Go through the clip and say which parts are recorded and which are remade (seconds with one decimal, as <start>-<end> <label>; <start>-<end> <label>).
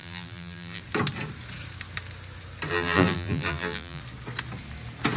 0.0-0.8 remade; 0.8-2.7 recorded; 2.7-4.0 remade; 4.0-5.2 recorded